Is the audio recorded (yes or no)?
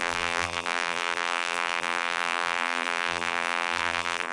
no